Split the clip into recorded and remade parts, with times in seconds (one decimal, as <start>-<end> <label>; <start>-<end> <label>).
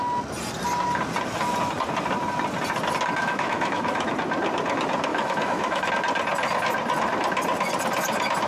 0.0-3.2 recorded; 3.2-4.1 remade; 4.1-5.1 recorded; 5.1-5.9 remade; 5.9-8.5 recorded